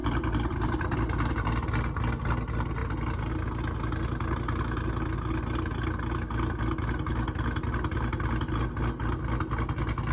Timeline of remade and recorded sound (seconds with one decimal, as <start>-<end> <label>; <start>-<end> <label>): 0.0-1.4 remade; 1.4-10.1 recorded